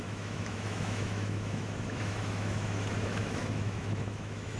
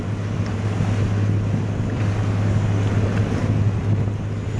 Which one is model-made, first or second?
first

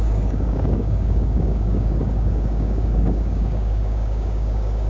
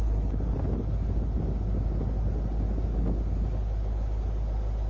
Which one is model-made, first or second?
first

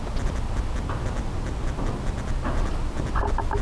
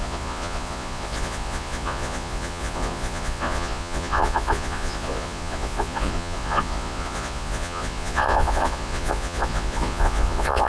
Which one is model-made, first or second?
second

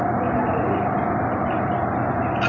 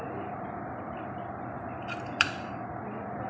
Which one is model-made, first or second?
second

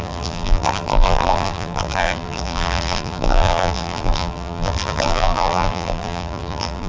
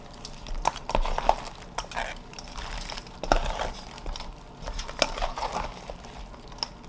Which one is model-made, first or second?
first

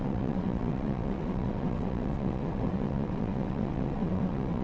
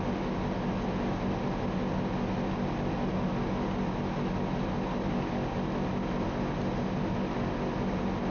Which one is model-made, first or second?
first